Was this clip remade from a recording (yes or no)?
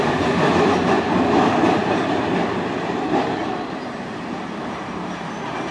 yes